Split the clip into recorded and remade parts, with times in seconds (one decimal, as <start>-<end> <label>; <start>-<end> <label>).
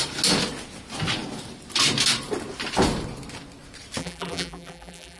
0.0-4.0 recorded; 4.0-5.2 remade